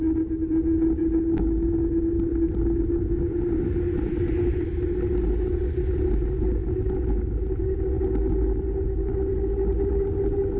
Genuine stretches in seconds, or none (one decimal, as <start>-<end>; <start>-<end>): 0.0-10.6